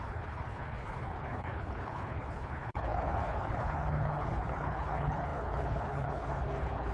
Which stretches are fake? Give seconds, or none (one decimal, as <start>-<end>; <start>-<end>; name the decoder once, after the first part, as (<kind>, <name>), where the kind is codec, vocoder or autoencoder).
0.0-6.9 (codec, HILCodec)